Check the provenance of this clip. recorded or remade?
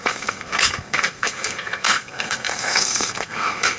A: remade